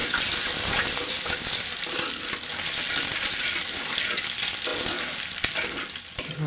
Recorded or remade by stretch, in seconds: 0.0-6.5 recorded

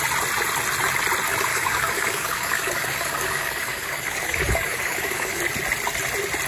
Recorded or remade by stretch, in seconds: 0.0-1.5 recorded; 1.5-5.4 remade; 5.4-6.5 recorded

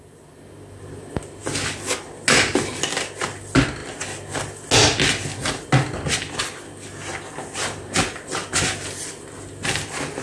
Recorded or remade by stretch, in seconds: 0.0-10.2 recorded

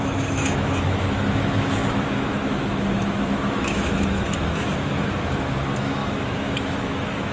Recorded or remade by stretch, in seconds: 0.0-7.3 remade

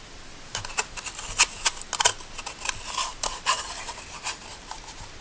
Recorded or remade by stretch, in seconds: 0.0-3.1 recorded; 3.1-4.0 remade; 4.0-5.2 recorded